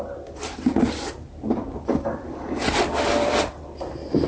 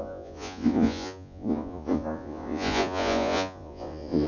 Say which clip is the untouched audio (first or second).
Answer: first